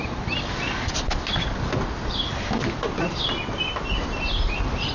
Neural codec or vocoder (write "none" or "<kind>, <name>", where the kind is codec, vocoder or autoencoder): none